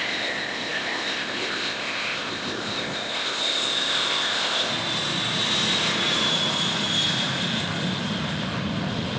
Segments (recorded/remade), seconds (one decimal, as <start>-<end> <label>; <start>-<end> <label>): 0.0-4.7 remade; 4.7-9.2 recorded